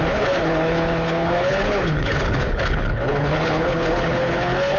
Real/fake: fake